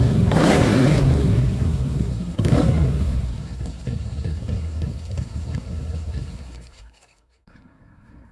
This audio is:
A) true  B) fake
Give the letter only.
B